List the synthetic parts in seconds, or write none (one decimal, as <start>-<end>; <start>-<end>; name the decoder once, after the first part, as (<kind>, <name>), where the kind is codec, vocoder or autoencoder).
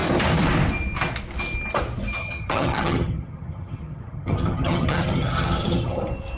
2.2-6.0 (vocoder, HiFi-GAN)